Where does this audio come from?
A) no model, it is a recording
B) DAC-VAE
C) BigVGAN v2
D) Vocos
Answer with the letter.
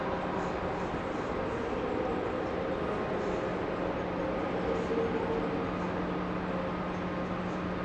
A